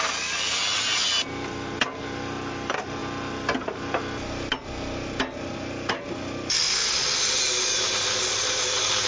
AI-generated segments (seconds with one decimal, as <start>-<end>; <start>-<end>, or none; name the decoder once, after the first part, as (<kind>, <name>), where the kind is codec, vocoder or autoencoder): none